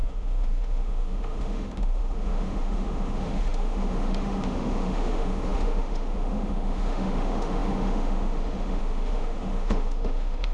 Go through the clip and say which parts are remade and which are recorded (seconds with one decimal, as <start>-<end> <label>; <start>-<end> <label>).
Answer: 0.0-10.5 remade